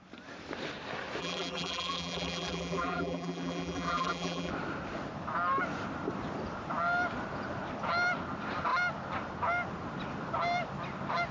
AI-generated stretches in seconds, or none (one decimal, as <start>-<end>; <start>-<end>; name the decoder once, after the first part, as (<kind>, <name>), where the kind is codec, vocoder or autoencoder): 1.2-4.5 (vocoder, BigVGAN v2)